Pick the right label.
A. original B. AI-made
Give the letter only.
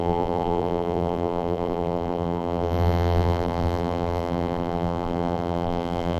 B